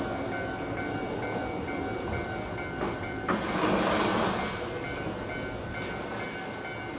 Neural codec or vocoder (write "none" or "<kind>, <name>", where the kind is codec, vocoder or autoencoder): none